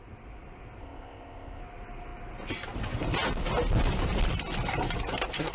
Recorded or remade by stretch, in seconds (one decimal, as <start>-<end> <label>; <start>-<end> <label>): 0.0-0.8 recorded; 0.8-1.6 remade; 1.6-5.5 recorded